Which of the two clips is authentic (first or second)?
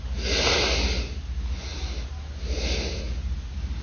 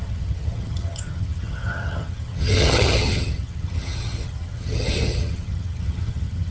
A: first